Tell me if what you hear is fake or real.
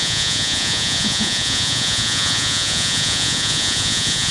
fake